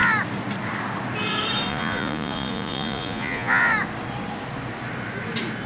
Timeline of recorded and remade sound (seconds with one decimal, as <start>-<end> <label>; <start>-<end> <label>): 0.0-1.7 recorded; 1.7-3.6 remade; 3.6-5.7 recorded